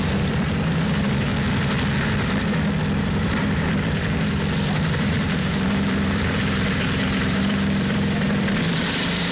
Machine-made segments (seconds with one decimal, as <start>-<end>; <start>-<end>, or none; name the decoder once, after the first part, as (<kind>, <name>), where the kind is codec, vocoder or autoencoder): 0.0-1.3 (vocoder, BigVGAN v2); 3.0-9.3